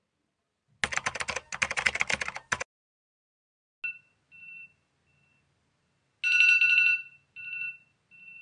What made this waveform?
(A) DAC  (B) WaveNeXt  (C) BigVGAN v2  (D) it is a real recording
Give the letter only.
D